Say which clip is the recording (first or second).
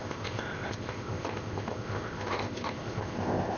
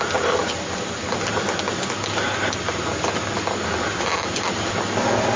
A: second